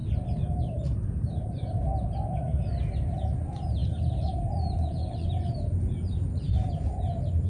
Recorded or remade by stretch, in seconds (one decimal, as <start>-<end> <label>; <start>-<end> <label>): 0.0-0.6 recorded; 0.6-7.5 remade